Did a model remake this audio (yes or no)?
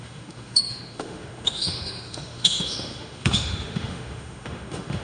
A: yes